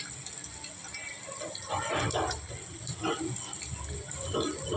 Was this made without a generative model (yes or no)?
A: yes